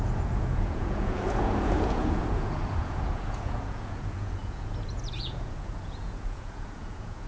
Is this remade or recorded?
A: remade